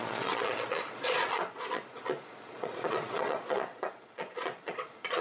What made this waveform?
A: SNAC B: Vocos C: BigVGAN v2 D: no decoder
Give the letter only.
B